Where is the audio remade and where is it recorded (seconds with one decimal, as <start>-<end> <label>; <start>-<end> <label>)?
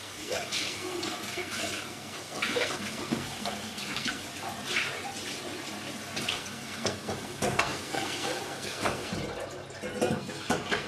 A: 0.0-4.3 remade; 4.3-6.2 recorded; 6.2-9.1 remade; 9.1-10.1 recorded; 10.1-10.9 remade